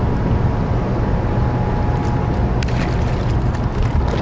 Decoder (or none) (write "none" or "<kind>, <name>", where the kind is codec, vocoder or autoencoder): none